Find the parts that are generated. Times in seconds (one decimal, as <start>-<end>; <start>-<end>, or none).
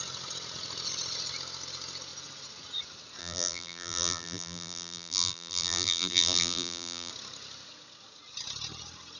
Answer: 3.2-7.1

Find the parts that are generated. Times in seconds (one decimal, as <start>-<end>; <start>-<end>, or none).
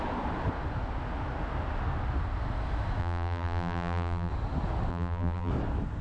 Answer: 3.0-4.3; 4.9-5.5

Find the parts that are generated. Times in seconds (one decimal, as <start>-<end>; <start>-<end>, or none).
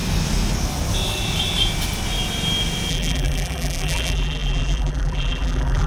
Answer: 2.9-5.9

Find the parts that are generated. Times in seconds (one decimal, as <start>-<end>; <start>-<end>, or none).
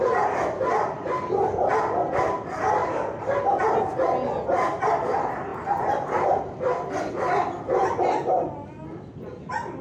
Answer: 2.8-3.4; 5.5-7.1; 7.8-8.4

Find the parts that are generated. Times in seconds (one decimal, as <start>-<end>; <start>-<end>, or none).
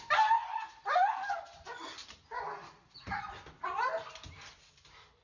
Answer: 0.4-1.3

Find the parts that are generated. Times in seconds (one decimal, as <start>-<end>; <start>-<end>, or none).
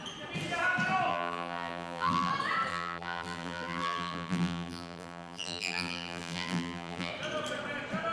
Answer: 1.1-2.3; 2.7-7.1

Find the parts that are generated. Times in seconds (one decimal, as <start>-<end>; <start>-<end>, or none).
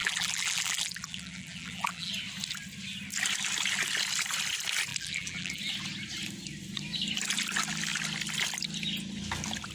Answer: 0.0-2.1; 4.9-5.6